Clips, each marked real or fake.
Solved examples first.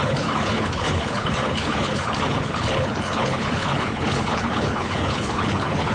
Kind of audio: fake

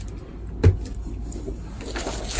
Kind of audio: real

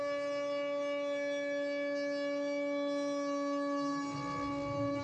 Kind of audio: real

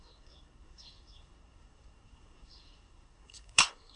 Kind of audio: fake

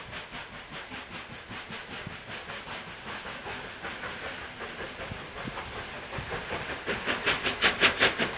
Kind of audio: real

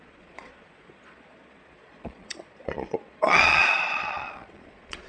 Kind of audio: fake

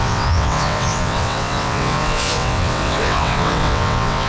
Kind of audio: fake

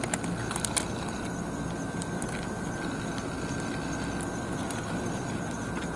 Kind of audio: real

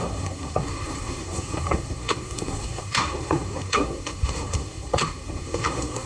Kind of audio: fake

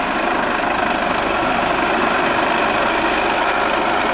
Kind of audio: real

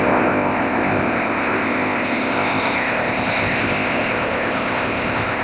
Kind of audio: fake